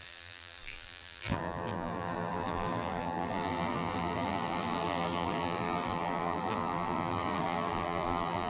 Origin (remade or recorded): remade